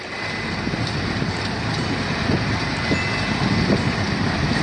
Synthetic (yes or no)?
no